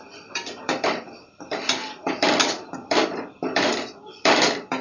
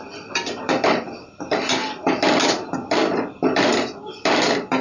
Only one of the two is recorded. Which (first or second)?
second